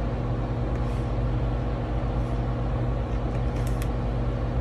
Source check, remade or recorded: recorded